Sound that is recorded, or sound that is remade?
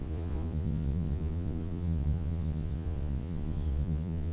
remade